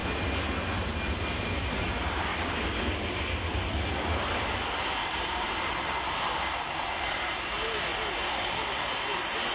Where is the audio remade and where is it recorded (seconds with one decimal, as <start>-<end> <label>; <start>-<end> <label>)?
0.0-9.5 recorded